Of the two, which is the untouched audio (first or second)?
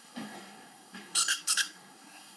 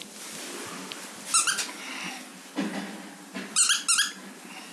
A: second